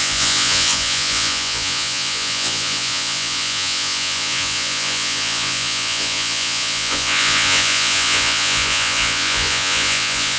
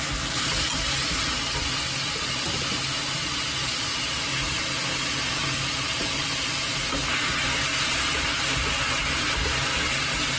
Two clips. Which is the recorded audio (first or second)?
second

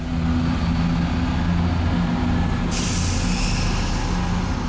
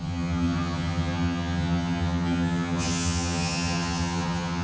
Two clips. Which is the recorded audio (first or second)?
first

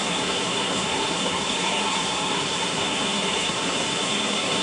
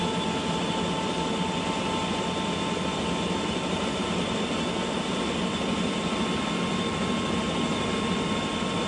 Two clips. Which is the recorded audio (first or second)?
second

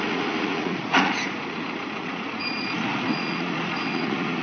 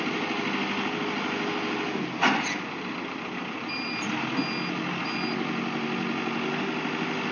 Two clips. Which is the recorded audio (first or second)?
second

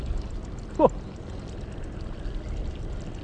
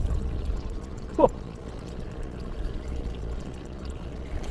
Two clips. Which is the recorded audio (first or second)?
first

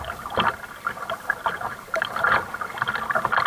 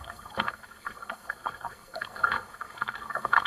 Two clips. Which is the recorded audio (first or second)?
first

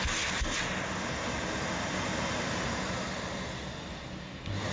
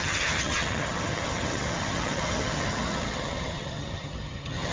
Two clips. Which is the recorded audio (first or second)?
first